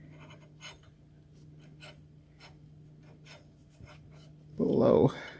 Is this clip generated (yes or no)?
no